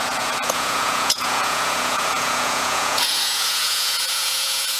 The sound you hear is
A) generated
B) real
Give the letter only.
A